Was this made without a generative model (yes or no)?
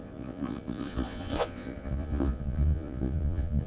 no